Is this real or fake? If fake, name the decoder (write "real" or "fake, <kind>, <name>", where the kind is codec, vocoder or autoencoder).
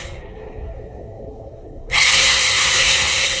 fake, codec, SNAC